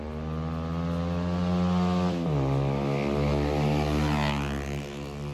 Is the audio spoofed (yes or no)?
no